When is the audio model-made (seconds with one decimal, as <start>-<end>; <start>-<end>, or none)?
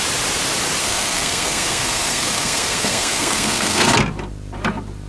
0.8-3.9